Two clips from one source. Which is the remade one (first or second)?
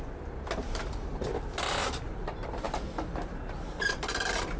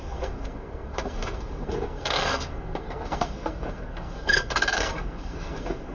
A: second